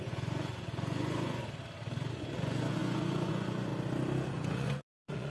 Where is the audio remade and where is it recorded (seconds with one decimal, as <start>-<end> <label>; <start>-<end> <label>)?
0.0-1.4 remade; 1.4-2.1 recorded; 2.1-3.7 remade; 3.7-4.3 recorded; 4.3-5.3 remade